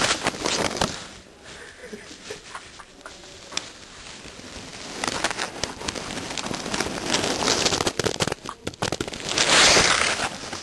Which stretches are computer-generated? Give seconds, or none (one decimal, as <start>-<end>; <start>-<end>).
none